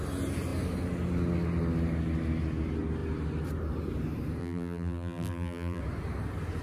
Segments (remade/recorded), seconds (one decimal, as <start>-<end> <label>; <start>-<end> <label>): 0.0-4.4 recorded; 4.4-5.8 remade; 5.8-6.6 recorded